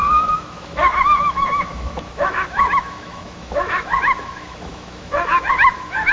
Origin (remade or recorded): remade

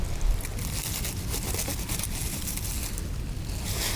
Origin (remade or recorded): recorded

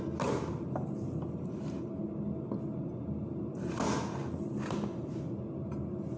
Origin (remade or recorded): recorded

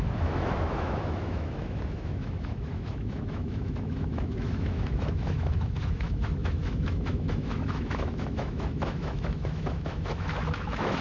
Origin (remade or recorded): remade